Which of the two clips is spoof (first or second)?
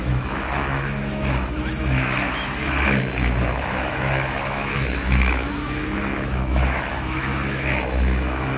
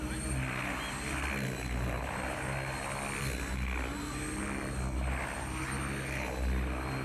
first